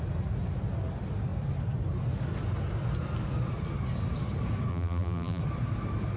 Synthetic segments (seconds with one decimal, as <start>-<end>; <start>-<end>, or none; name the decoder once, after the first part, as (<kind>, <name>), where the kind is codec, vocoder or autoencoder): 4.7-5.4 (vocoder, BigVGAN v2)